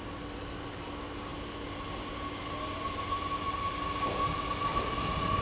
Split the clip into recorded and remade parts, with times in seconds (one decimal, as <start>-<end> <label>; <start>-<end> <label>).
0.0-5.4 recorded